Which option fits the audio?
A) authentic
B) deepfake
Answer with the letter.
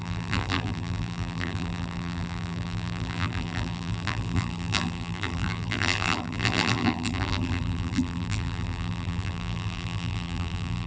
B